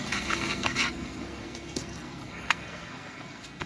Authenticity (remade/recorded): remade